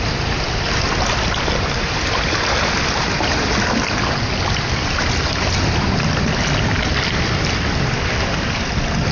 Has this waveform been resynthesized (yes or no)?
no